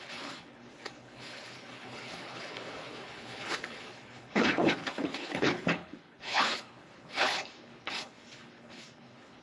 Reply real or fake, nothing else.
fake